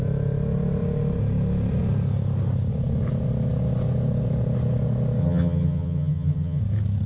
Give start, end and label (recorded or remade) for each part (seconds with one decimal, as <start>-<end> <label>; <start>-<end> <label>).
0.0-5.2 recorded; 5.2-6.6 remade; 6.6-7.1 recorded